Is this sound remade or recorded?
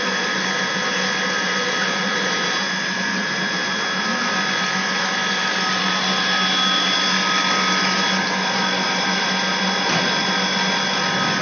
recorded